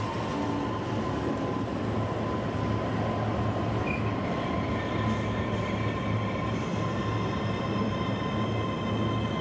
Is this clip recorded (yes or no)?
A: yes